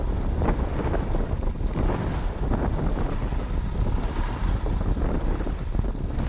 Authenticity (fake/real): real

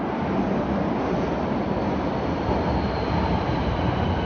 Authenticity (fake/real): real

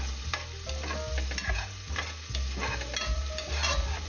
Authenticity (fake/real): real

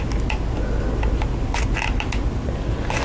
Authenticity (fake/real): real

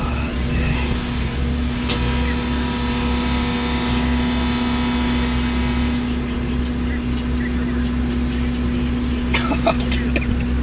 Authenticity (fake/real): real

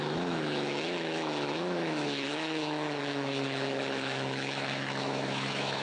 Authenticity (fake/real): fake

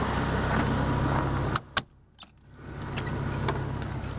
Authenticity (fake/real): real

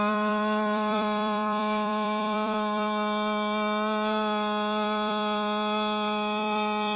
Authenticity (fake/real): fake